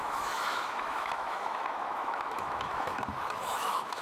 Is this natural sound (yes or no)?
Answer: no